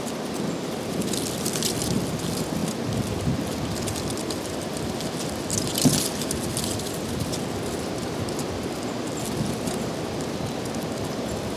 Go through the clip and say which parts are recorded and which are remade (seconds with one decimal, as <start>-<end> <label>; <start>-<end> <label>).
0.0-11.6 recorded